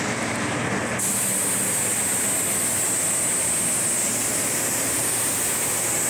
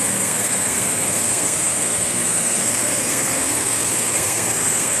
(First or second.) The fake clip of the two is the second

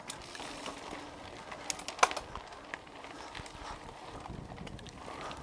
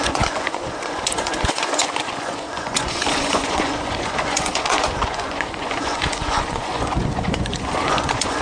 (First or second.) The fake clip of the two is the second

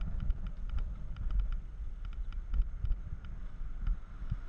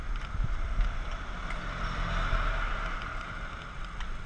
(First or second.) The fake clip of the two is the first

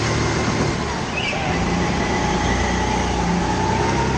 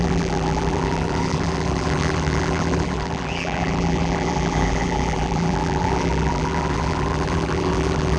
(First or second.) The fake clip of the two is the second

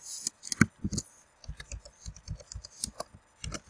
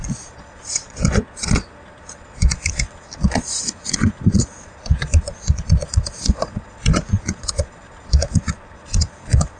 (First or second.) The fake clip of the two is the second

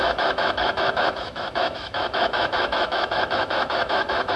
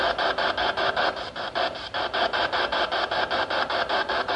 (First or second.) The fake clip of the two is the first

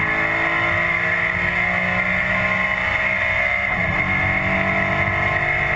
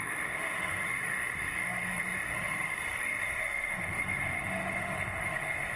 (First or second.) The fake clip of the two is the second